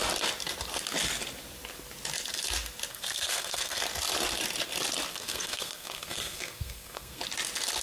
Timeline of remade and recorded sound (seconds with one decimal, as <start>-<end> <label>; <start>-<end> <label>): 0.0-2.9 recorded; 2.9-3.8 remade; 3.8-5.1 recorded; 5.1-7.2 remade; 7.2-7.8 recorded